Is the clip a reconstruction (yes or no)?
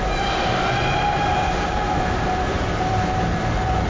yes